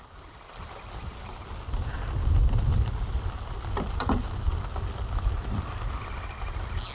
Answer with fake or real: real